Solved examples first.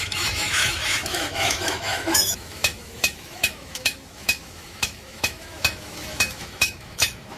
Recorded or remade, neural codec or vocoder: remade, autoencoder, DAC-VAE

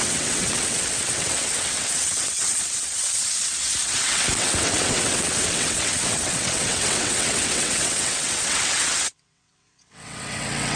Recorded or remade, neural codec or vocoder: remade, vocoder, WaveNeXt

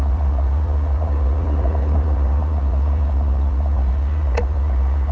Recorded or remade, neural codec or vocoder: remade, vocoder, Vocos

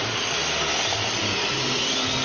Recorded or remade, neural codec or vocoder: recorded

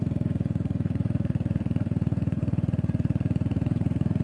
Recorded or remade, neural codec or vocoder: remade, vocoder, Vocos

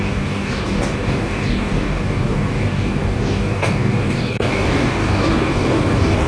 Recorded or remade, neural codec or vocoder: remade, codec, DAC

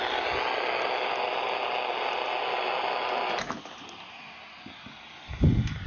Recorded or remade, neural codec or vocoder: recorded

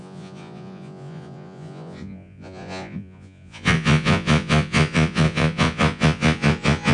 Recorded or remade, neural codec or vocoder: remade, vocoder, Vocos